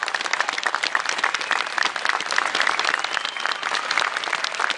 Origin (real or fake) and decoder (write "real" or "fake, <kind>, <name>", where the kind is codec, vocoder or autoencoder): fake, vocoder, BigVGAN v2